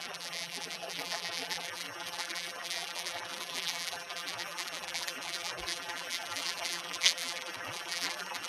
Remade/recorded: remade